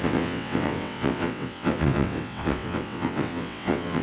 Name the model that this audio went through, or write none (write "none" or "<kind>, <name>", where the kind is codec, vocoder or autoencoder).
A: vocoder, WaveNeXt